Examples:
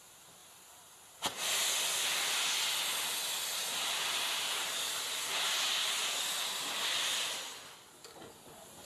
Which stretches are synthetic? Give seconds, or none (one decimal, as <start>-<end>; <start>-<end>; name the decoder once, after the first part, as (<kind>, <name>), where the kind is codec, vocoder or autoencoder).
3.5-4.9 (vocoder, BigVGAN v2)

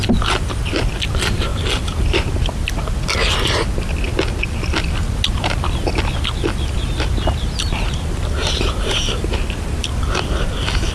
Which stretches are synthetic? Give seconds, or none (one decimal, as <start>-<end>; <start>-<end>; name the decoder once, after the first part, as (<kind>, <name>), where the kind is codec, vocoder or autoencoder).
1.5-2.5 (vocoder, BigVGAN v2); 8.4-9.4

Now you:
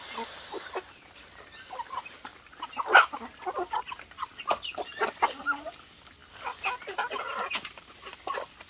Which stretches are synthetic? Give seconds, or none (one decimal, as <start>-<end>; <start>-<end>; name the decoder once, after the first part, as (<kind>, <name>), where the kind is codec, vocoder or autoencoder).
2.3-4.9 (vocoder, BigVGAN v2)

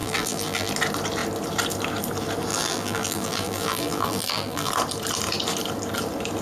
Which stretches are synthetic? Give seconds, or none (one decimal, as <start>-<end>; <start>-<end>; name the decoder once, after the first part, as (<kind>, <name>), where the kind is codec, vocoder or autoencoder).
0.0-0.7 (vocoder, BigVGAN v2); 2.5-4.7

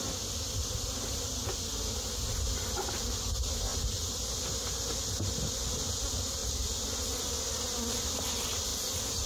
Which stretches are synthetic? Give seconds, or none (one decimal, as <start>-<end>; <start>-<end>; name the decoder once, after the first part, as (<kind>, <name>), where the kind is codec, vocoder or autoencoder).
3.7-4.4 (vocoder, BigVGAN v2); 6.4-7.3; 8.7-9.3

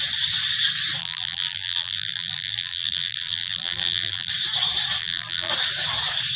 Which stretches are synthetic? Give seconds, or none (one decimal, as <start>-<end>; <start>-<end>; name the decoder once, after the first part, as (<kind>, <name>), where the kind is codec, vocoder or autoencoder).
1.0-4.3 (vocoder, BigVGAN v2); 5.0-5.5

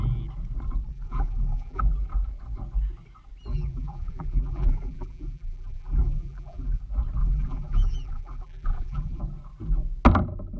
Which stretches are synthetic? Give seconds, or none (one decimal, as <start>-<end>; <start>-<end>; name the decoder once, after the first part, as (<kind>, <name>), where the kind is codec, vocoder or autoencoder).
0.9-1.8 (vocoder, BigVGAN v2); 3.5-6.8; 7.2-9.2

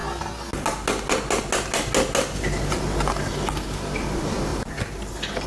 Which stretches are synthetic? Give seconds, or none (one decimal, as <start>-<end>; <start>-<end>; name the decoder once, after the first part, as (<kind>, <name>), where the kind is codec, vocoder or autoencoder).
4.5-5.1 (vocoder, BigVGAN v2)